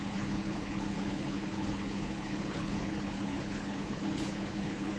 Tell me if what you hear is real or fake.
fake